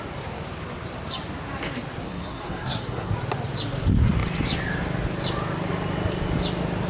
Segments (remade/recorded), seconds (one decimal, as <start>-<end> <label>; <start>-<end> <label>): 0.0-2.0 recorded; 2.0-3.1 remade; 3.1-6.9 recorded